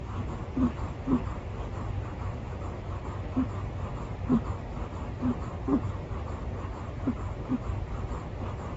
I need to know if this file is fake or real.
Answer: real